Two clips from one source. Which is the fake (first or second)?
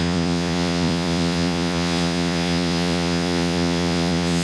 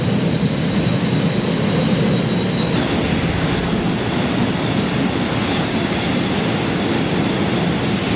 first